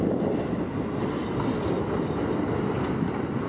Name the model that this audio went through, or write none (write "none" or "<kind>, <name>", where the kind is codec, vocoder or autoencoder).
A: none